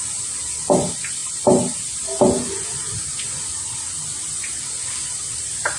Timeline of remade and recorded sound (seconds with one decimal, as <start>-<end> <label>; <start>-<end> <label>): 0.0-5.8 recorded